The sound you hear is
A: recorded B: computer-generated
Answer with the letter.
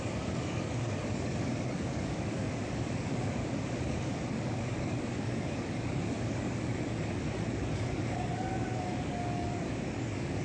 B